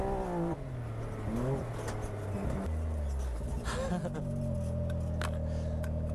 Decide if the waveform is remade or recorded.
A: recorded